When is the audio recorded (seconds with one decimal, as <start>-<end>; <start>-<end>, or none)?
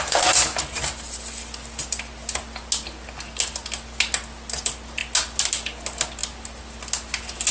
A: 0.0-7.5